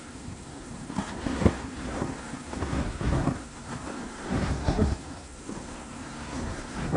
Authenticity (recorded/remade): remade